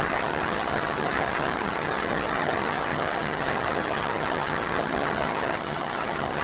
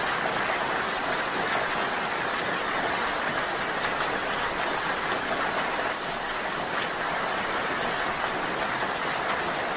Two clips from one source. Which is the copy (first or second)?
first